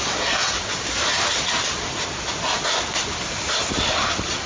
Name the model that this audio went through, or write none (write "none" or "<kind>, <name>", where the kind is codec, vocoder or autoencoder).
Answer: none